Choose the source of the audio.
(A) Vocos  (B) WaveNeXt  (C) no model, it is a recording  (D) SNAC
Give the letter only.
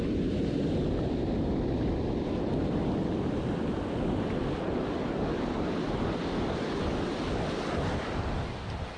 C